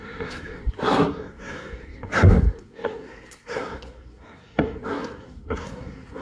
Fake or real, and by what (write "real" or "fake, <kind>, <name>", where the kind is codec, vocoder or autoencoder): fake, codec, SNAC